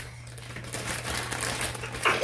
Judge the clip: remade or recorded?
recorded